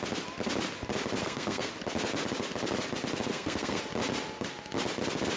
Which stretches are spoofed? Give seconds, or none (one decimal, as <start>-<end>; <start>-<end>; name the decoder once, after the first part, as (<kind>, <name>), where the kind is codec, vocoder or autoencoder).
1.2-1.7 (codec, SNAC); 3.3-3.8